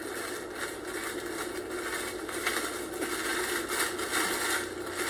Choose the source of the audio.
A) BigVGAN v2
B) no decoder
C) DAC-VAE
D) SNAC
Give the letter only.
B